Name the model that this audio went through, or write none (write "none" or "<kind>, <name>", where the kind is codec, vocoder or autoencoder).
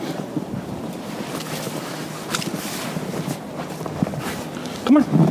vocoder, BigVGAN v2